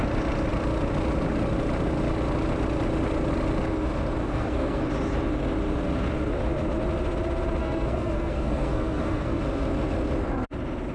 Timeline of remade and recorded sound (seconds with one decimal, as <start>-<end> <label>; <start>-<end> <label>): 0.0-4.2 recorded; 4.2-4.9 remade; 4.9-7.6 recorded; 7.6-9.4 remade; 9.4-10.9 recorded